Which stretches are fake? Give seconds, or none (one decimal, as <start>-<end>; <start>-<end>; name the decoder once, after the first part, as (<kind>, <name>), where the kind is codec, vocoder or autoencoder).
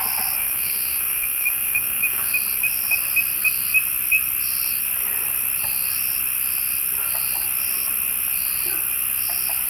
0.4-2.3 (autoencoder, DAC-VAE)